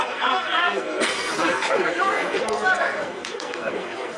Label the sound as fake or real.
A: fake